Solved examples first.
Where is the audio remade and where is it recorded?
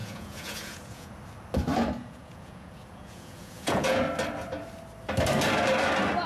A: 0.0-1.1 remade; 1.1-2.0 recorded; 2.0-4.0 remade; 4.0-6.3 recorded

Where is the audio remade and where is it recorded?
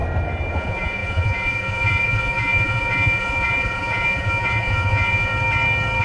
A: 0.0-0.5 recorded; 0.5-5.3 remade; 5.3-6.0 recorded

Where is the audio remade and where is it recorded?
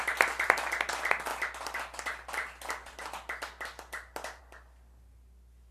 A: 0.0-5.7 recorded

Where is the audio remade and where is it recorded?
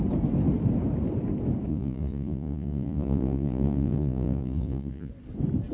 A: 0.0-1.7 recorded; 1.7-5.1 remade; 5.1-5.7 recorded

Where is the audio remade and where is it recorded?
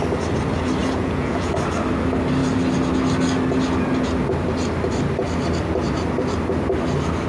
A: 0.0-0.8 recorded; 0.8-1.5 remade; 1.5-7.3 recorded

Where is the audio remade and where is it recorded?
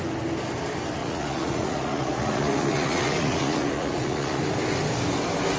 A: 0.0-1.0 recorded; 1.0-4.4 remade; 4.4-5.6 recorded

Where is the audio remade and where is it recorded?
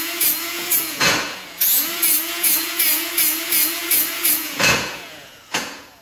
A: 0.0-6.0 remade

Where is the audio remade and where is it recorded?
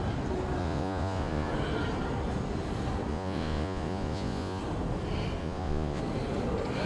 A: 0.0-0.6 recorded; 0.6-1.5 remade; 1.5-3.1 recorded; 3.1-4.6 remade; 4.6-5.4 recorded; 5.4-6.0 remade; 6.0-6.9 recorded